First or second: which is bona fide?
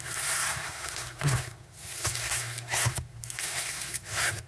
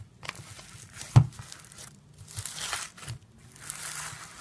second